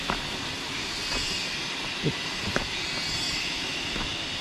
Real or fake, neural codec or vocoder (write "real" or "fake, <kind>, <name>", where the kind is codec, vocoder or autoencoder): real